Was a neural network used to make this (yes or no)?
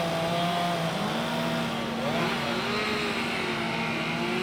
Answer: no